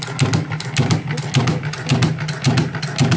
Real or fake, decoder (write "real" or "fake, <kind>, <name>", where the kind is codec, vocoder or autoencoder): real